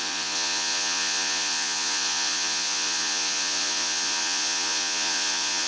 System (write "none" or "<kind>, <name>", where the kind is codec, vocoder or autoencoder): vocoder, Vocos